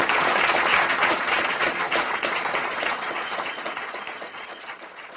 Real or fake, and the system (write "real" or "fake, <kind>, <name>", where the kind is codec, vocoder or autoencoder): fake, vocoder, Vocos